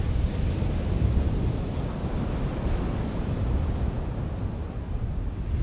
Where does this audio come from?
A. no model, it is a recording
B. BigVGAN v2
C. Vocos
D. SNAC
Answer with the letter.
A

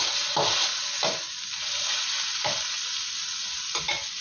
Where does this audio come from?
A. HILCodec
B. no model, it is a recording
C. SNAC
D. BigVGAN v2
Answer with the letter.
B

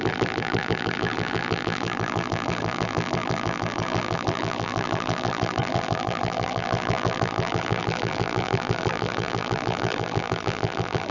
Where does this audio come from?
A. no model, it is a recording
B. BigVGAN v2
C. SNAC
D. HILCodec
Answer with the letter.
B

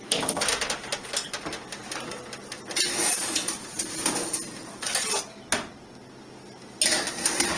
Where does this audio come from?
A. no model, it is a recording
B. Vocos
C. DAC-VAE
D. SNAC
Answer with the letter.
A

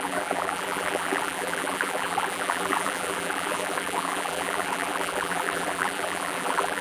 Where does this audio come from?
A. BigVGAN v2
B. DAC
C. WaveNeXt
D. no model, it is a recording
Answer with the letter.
A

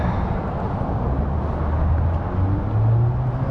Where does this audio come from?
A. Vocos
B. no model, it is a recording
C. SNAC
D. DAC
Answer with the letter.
B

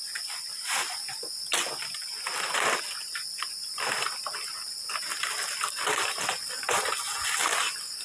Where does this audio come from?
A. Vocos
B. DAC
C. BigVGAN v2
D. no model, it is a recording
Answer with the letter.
D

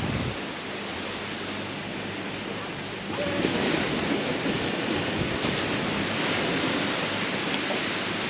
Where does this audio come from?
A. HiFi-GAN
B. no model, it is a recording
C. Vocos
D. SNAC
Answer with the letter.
B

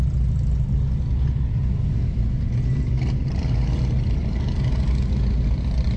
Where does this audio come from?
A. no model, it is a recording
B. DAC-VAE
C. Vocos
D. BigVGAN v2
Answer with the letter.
A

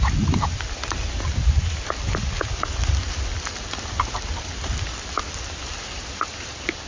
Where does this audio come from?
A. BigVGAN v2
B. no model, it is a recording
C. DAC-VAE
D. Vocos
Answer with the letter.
A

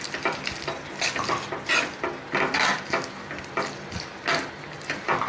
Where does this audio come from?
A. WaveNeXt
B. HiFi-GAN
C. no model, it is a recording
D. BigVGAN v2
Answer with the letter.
C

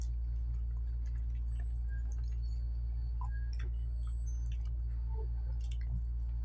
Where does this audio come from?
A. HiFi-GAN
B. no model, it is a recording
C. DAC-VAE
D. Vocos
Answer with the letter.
B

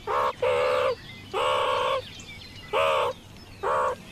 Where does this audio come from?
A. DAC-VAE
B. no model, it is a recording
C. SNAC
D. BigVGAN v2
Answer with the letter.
B